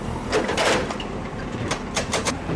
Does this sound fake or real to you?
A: fake